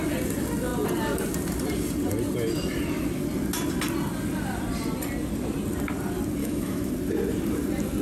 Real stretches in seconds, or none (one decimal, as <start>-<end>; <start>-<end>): 0.0-6.4; 6.9-8.0